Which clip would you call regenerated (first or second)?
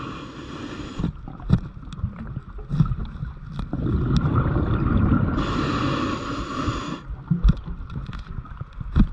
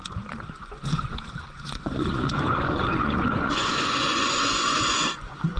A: second